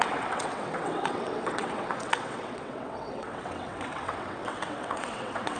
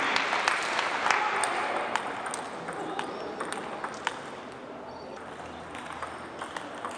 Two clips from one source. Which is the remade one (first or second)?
first